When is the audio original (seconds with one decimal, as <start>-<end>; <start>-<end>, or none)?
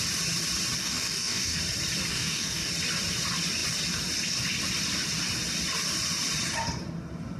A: 0.0-0.8; 1.6-2.1; 2.7-7.4